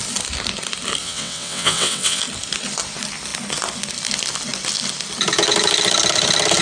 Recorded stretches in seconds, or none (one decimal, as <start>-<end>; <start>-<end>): 0.0-1.0; 2.2-6.6